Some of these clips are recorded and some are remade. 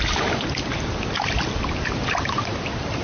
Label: recorded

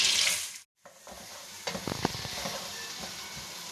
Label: recorded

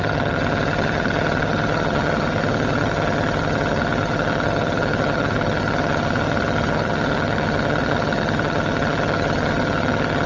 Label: remade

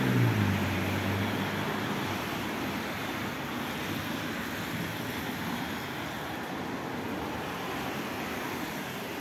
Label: recorded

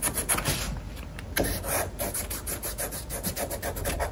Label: recorded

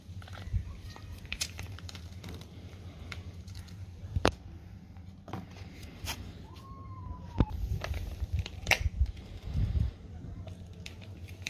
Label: remade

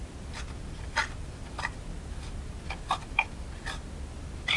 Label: recorded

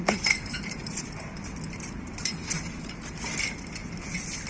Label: remade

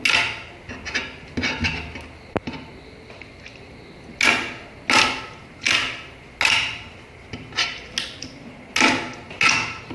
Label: recorded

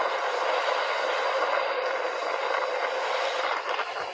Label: recorded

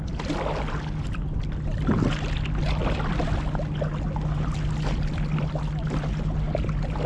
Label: recorded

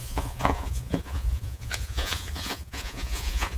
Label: remade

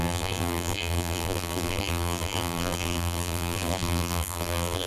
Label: remade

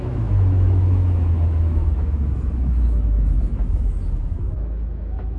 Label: remade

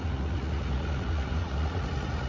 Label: remade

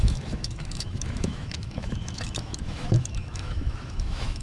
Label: remade